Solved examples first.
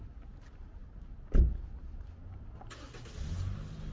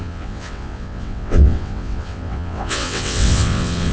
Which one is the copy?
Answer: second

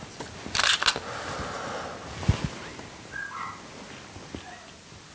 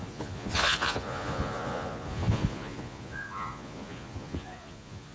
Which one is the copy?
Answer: second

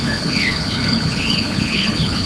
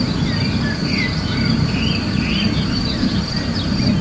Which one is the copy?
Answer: first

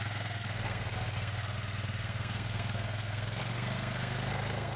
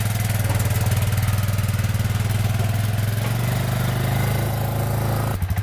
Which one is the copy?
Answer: first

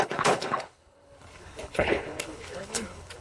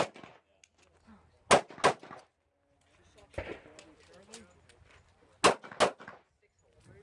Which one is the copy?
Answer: first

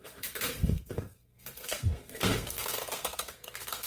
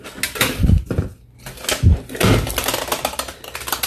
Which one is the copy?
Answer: first